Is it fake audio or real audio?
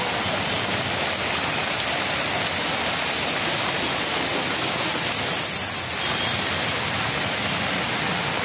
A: real